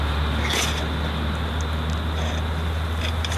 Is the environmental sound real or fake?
real